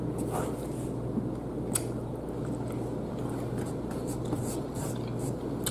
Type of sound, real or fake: real